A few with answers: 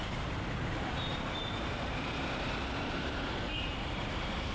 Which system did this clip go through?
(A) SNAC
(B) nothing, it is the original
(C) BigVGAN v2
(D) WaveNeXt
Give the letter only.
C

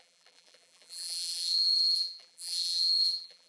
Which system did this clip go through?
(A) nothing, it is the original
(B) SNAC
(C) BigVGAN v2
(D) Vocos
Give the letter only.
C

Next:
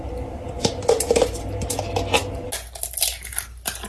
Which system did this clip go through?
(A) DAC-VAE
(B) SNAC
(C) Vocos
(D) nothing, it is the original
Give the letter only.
D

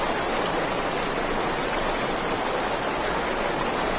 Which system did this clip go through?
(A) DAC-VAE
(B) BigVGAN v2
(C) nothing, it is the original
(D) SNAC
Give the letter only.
C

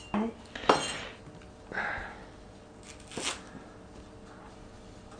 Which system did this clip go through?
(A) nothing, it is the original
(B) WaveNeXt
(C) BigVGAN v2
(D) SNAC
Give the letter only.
A